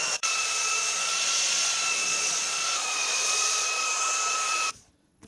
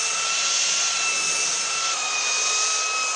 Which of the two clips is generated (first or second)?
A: first